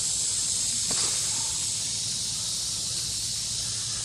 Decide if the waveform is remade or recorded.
recorded